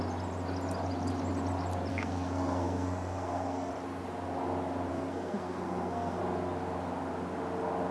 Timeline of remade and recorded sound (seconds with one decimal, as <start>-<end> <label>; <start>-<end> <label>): 0.0-1.9 recorded; 1.9-3.7 remade; 3.7-4.9 recorded; 4.9-6.2 remade; 6.2-7.9 recorded